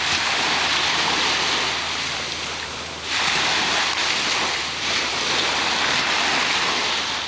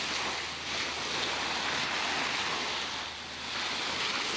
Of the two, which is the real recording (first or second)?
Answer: second